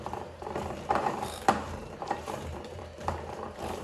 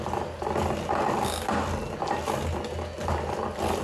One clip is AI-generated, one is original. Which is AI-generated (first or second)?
first